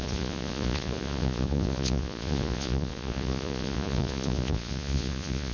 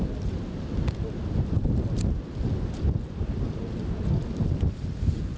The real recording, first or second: second